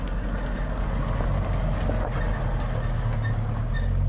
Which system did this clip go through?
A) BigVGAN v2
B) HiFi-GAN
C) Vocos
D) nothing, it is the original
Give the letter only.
D